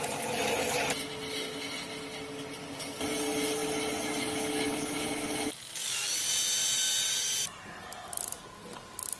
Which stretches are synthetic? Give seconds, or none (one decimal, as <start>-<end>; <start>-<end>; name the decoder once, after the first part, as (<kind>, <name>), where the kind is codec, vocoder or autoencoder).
none